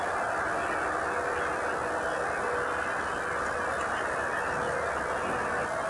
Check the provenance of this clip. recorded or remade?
recorded